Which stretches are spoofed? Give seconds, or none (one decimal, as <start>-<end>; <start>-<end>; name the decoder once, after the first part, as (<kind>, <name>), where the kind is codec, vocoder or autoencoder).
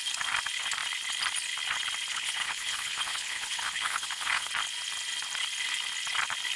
2.1-4.5 (codec, HILCodec)